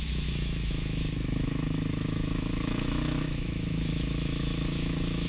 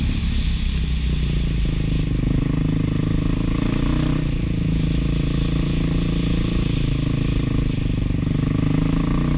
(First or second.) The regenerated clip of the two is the first